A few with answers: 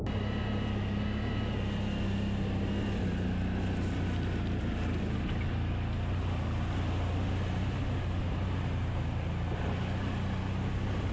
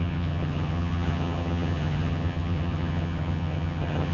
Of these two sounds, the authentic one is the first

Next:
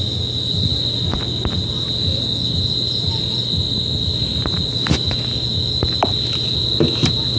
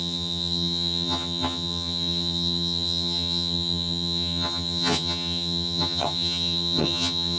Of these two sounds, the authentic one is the first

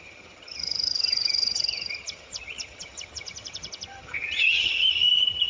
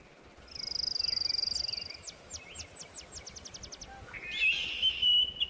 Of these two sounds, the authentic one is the second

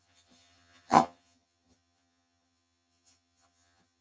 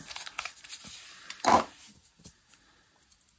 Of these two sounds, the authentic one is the second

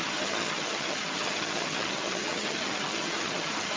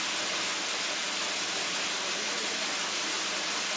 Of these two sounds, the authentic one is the second